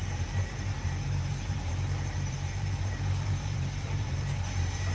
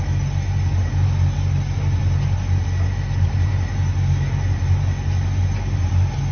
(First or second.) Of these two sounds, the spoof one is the first